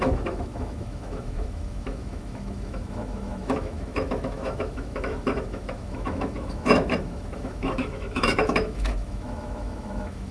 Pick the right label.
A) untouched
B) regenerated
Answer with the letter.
B